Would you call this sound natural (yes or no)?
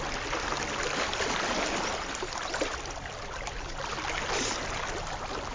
yes